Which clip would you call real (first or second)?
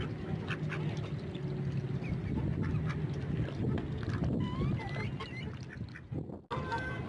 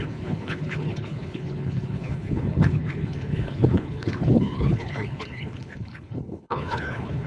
first